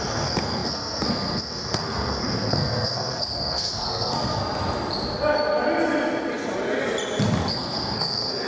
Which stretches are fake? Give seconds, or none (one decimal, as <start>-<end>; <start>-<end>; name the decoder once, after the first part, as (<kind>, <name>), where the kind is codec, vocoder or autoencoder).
0.0-4.4 (codec, SNAC); 7.5-8.5